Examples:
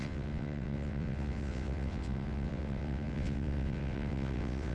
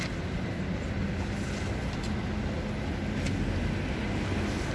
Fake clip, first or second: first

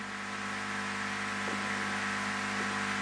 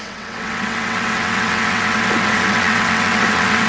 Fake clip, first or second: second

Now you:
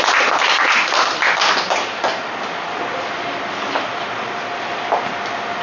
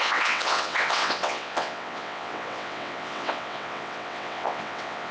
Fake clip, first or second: second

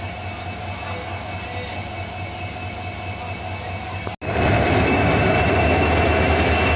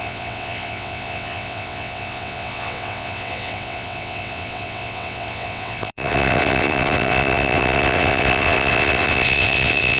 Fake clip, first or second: second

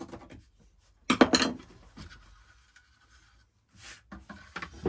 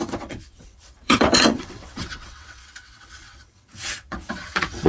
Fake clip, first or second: second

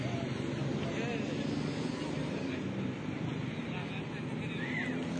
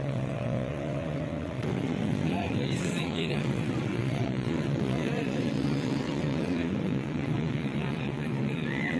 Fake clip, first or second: second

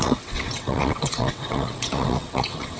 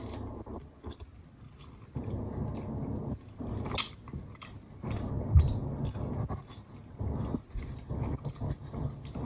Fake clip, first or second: first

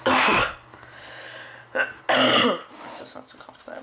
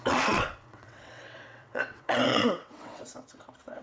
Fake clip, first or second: second